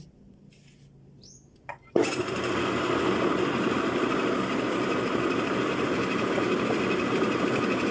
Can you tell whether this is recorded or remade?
recorded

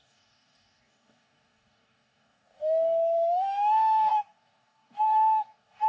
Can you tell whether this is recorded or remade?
remade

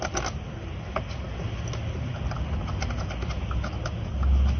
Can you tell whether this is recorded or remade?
recorded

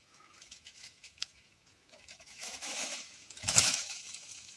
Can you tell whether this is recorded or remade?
remade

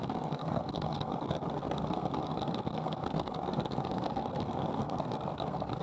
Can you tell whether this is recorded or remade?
remade